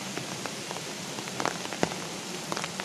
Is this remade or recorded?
recorded